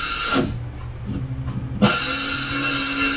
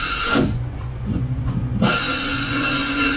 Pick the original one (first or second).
first